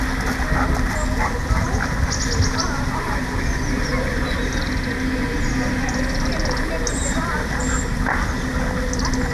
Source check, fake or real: real